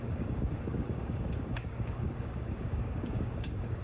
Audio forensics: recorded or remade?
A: remade